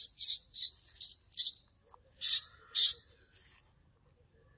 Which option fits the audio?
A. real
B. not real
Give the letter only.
A